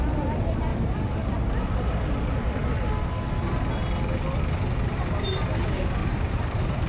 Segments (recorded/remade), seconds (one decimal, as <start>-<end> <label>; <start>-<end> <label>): 0.0-0.7 recorded; 0.7-1.5 remade; 1.5-6.0 recorded; 6.0-6.9 remade